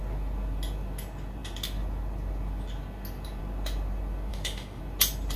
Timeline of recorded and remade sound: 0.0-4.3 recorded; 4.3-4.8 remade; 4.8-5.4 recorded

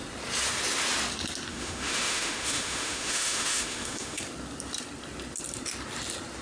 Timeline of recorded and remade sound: 0.0-1.5 recorded; 1.5-4.2 remade; 4.2-6.4 recorded